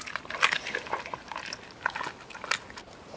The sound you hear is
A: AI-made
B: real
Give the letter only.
B